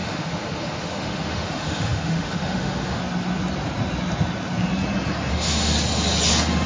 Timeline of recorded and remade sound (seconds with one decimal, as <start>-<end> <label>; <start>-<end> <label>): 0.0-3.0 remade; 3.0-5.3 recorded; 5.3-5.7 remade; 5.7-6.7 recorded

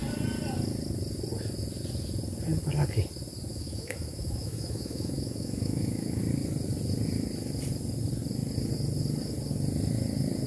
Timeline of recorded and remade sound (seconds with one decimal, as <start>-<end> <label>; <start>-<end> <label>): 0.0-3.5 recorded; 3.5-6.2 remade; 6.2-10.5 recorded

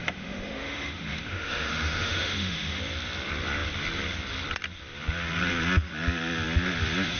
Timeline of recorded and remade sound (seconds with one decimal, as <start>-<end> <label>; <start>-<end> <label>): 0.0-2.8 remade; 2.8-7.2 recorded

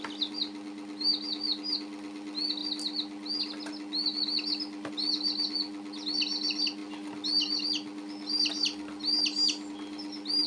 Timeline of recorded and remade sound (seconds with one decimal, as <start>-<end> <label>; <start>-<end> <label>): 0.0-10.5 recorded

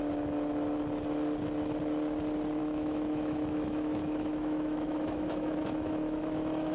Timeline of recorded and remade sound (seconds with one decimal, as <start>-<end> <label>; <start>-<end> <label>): 0.0-2.6 recorded; 2.6-6.7 remade